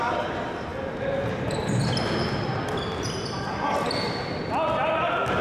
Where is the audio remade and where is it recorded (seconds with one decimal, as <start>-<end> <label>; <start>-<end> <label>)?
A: 0.0-5.4 recorded